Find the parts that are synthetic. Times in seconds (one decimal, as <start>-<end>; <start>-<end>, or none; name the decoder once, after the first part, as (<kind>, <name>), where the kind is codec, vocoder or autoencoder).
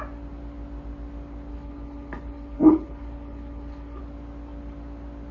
1.5-4.0 (codec, HILCodec)